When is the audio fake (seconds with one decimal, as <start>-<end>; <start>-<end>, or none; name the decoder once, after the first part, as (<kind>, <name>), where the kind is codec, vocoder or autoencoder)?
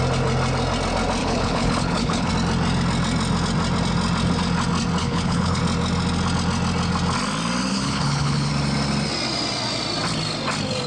1.2-2.3 (codec, HILCodec); 5.0-5.6; 7.7-8.5